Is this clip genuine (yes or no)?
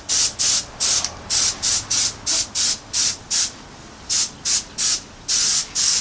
yes